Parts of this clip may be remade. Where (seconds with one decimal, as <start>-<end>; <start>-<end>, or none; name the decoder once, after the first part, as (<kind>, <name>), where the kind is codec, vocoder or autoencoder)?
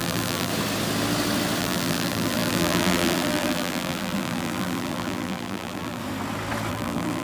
0.0-0.5 (vocoder, BigVGAN v2); 1.6-6.0; 6.7-7.2